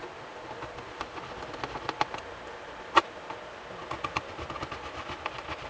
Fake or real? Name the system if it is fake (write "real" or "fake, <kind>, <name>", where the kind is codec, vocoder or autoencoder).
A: real